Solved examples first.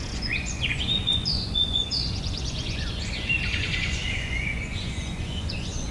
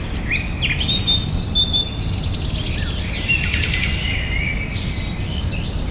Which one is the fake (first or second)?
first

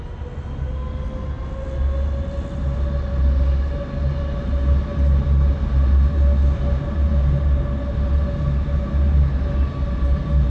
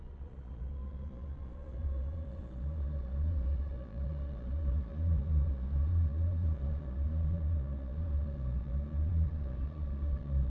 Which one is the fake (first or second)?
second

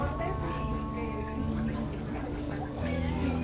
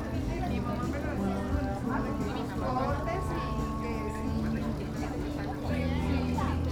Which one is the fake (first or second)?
first